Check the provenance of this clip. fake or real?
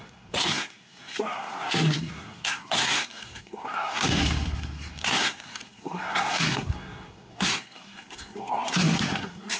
fake